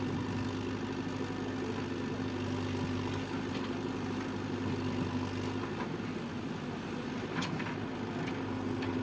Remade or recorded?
recorded